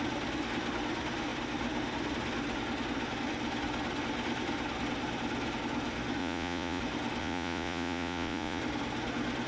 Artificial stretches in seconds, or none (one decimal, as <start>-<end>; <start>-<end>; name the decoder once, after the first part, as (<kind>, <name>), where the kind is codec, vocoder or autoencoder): 6.2-6.8 (vocoder, Vocos); 7.2-8.6